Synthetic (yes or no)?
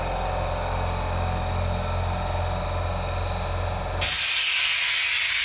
no